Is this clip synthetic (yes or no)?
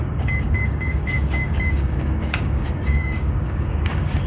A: yes